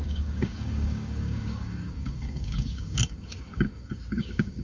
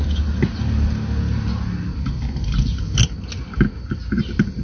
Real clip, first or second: second